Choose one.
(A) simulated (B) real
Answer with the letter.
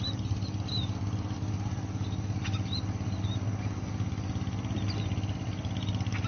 B